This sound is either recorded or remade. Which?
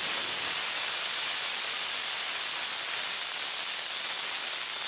recorded